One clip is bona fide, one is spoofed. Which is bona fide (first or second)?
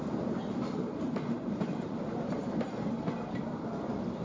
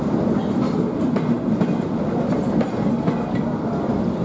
second